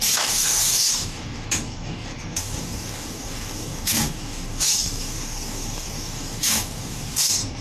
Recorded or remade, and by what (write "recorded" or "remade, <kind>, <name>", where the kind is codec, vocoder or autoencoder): remade, codec, DAC